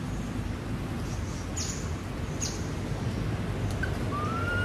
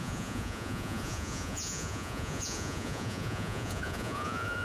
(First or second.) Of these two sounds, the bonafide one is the first